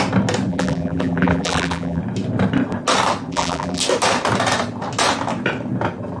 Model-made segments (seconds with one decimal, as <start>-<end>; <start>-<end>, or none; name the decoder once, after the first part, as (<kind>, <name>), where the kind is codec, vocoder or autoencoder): 0.5-2.0 (vocoder, BigVGAN v2); 3.3-3.8